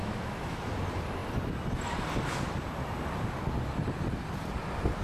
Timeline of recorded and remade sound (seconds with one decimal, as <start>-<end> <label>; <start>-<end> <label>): 0.0-0.7 remade; 0.7-5.0 recorded